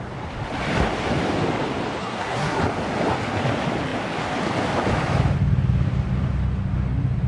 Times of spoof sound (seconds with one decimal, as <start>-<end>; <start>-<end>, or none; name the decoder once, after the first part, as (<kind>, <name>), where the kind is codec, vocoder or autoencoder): 2.0-2.6 (codec, SNAC)